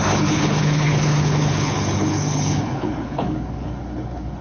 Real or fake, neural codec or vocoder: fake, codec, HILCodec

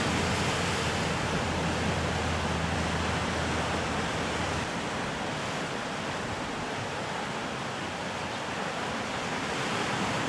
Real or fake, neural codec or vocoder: real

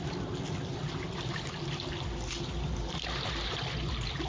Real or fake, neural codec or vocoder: real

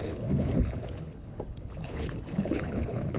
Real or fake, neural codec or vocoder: fake, codec, HILCodec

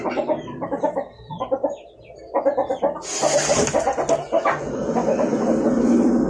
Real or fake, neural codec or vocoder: real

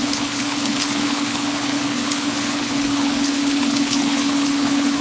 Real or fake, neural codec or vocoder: fake, codec, HILCodec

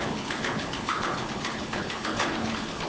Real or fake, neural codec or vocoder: fake, codec, HILCodec